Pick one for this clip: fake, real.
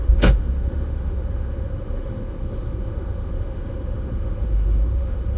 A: fake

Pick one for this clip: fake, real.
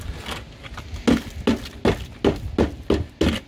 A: real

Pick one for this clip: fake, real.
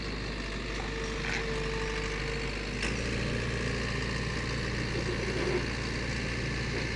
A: real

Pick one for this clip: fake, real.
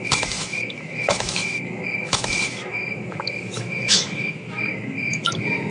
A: fake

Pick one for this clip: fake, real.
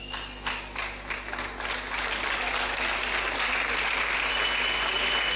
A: real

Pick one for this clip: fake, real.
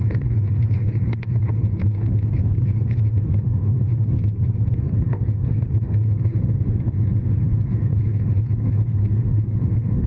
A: fake